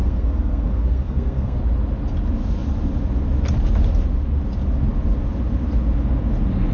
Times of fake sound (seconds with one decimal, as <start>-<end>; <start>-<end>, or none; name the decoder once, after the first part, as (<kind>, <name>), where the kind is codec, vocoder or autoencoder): 0.0-1.6 (codec, SNAC)

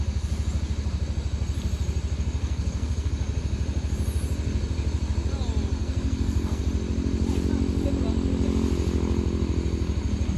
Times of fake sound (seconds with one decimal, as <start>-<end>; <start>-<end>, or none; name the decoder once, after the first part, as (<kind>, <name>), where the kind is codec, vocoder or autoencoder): 2.4-3.1 (codec, SNAC); 5.8-6.6

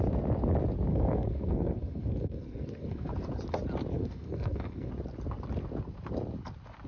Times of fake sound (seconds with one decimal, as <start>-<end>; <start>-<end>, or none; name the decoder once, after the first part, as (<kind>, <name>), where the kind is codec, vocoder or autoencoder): 0.9-3.1 (codec, SNAC); 3.9-4.9